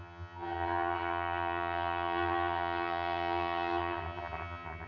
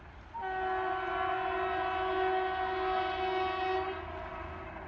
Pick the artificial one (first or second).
first